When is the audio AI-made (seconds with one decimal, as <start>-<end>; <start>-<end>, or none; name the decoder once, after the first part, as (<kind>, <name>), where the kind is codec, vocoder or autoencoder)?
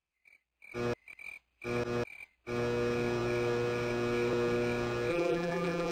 5.1-5.9 (vocoder, BigVGAN v2)